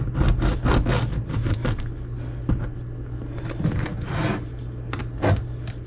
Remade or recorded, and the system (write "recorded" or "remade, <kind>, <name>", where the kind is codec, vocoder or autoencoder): recorded